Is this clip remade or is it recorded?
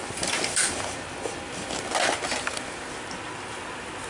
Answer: recorded